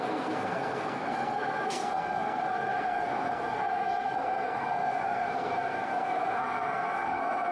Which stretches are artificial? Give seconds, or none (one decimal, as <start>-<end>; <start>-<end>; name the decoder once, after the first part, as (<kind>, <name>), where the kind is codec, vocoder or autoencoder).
0.0-7.5 (codec, SNAC)